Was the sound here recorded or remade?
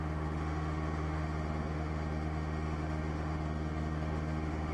remade